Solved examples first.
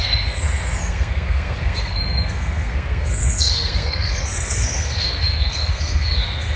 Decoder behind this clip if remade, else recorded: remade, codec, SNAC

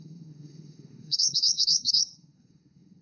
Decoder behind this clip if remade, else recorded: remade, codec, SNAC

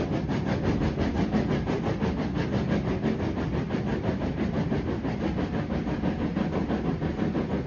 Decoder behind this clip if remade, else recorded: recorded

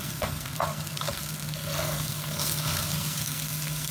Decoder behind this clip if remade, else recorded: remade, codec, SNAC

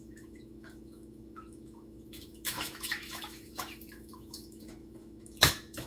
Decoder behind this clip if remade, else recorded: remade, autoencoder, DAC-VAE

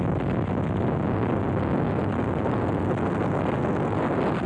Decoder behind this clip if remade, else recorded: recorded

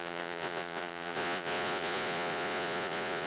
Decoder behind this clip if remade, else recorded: remade, vocoder, Vocos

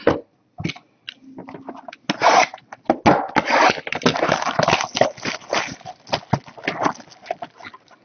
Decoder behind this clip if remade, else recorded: recorded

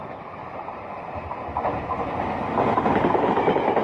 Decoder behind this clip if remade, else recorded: recorded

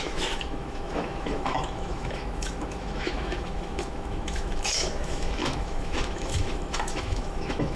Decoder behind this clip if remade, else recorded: remade, autoencoder, DAC-VAE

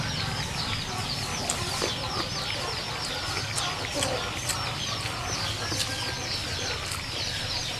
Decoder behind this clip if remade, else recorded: recorded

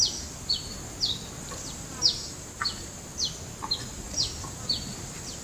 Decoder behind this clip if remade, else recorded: recorded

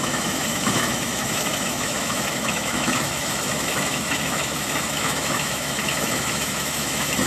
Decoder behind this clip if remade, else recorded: remade, autoencoder, DAC-VAE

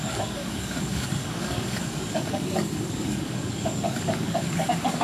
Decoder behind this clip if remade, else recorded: remade, codec, DAC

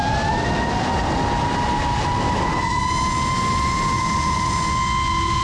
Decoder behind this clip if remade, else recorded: recorded